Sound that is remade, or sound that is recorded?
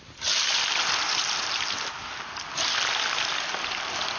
remade